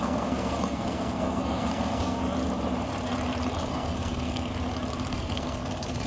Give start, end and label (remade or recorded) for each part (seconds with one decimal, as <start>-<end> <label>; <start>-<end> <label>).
0.0-2.2 remade; 2.2-3.7 recorded; 3.7-4.5 remade; 4.5-5.1 recorded; 5.1-6.1 remade